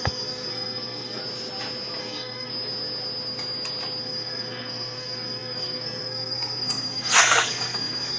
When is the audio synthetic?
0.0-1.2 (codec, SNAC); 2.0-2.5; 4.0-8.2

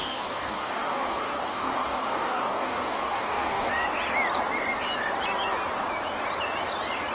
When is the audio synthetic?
0.0-3.7 (codec, DAC)